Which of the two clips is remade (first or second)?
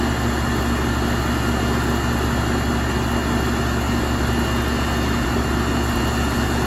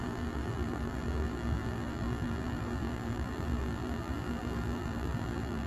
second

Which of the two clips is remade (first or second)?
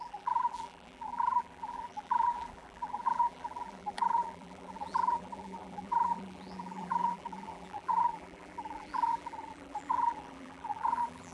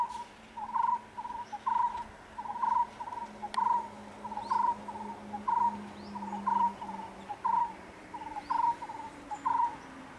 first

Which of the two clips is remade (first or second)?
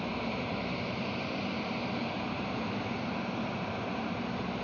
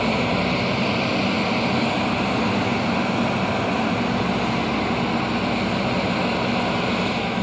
first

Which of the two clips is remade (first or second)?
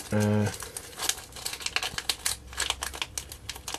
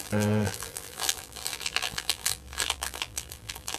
second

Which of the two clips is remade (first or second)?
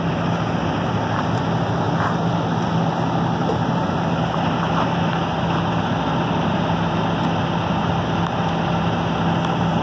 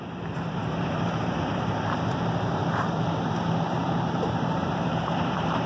second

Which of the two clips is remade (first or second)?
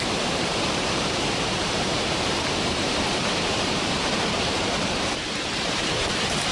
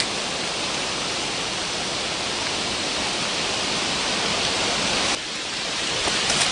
first